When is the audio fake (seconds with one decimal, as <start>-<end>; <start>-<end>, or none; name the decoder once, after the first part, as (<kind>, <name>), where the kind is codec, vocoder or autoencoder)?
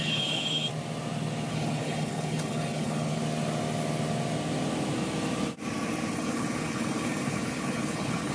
0.0-0.7 (codec, HILCodec); 1.5-3.2; 6.1-8.3